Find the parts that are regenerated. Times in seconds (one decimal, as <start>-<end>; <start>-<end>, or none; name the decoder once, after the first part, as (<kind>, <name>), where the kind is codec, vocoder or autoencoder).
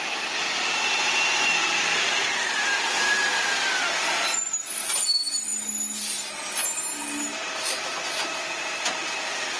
none